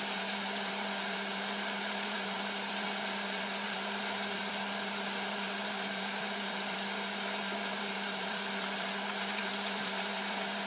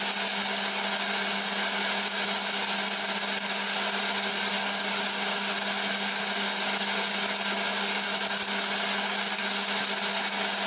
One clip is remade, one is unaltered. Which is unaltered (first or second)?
second